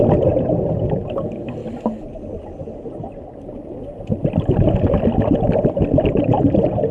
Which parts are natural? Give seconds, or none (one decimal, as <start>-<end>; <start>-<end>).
0.0-6.9